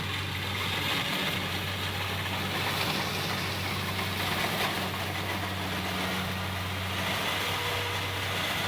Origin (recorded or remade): recorded